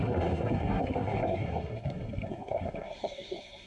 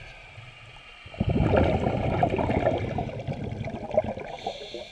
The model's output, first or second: first